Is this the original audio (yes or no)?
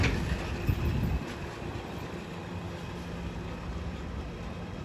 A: yes